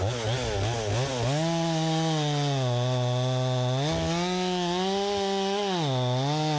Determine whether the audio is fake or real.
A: real